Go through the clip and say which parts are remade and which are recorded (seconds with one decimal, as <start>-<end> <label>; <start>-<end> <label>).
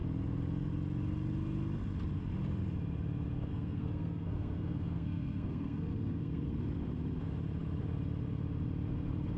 0.0-3.5 recorded; 3.5-6.6 remade; 6.6-9.4 recorded